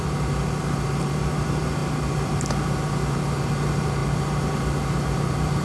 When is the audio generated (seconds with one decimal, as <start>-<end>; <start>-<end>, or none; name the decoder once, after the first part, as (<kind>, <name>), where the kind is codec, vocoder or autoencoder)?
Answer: 0.0-5.6 (vocoder, BigVGAN v2)

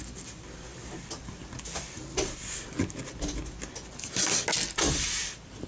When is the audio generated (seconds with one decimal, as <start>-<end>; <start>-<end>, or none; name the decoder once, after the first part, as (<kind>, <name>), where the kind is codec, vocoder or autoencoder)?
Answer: none